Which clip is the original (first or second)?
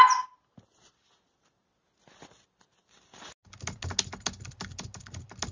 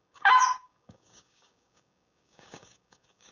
first